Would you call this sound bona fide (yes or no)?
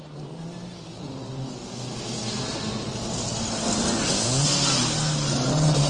yes